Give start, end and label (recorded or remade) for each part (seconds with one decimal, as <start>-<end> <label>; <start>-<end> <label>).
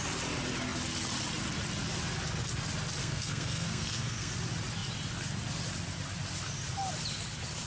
0.0-3.0 recorded; 3.0-4.3 remade; 4.3-7.7 recorded